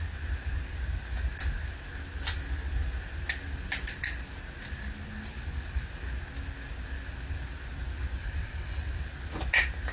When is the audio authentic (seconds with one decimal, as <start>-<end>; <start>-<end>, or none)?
0.0-8.2; 8.9-9.9